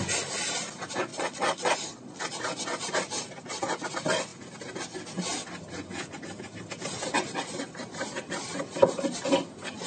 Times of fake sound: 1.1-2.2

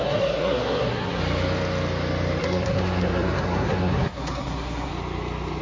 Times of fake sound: 0.0-1.2; 2.4-4.9

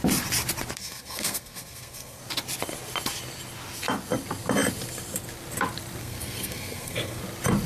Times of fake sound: 0.8-2.2; 6.0-7.2

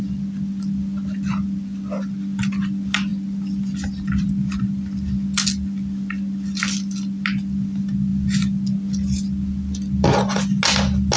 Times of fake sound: none

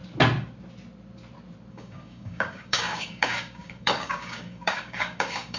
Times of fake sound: 1.7-5.6